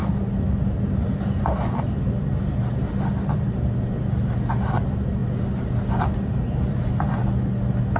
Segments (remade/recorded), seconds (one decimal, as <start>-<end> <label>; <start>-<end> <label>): 0.0-8.0 recorded